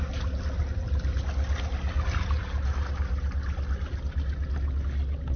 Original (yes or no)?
yes